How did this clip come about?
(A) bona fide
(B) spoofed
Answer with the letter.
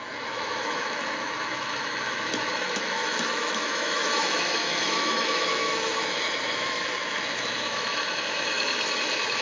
B